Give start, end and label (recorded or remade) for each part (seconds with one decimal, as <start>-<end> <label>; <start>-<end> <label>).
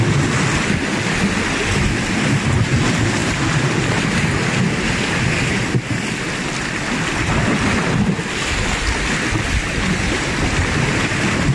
0.0-3.2 recorded; 3.2-4.3 remade; 4.3-11.5 recorded